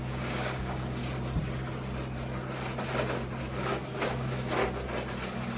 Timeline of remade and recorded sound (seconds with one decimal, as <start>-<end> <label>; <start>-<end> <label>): 0.0-1.0 remade; 1.0-3.4 recorded; 3.4-4.6 remade; 4.6-5.6 recorded